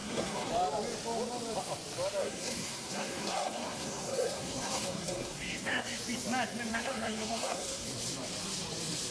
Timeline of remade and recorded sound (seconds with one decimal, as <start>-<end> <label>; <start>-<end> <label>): 0.0-0.5 remade; 0.5-2.2 recorded; 2.2-6.0 remade; 6.0-6.7 recorded; 6.7-7.9 remade; 7.9-9.1 recorded